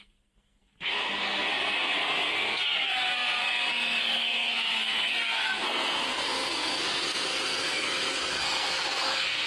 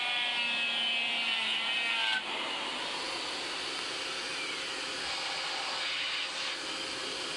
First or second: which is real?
second